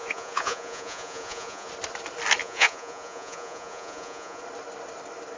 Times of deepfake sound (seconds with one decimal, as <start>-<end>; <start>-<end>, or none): 0.0-1.7; 2.4-4.4